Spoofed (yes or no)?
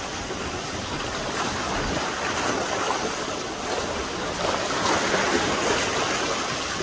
no